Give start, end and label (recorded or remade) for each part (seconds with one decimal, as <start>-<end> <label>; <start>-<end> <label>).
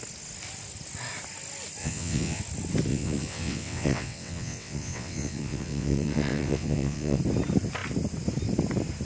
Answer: 0.0-1.8 recorded; 1.8-2.4 remade; 2.4-2.9 recorded; 2.9-7.2 remade; 7.2-9.0 recorded